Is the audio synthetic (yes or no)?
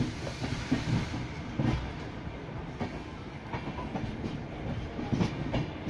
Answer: no